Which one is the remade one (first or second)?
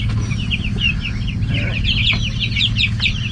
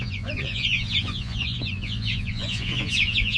second